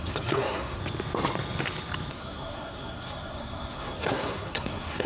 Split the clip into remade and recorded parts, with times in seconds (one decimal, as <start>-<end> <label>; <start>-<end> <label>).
0.0-0.8 remade; 0.8-2.1 recorded; 2.1-5.1 remade